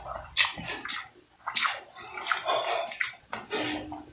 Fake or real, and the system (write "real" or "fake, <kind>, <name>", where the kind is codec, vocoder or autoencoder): real